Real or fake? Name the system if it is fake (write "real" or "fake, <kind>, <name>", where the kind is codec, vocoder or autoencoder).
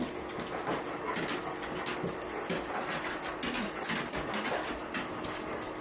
real